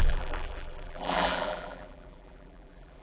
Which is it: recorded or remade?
remade